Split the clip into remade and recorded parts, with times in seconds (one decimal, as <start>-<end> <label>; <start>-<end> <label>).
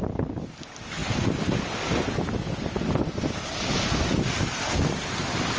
0.0-5.6 recorded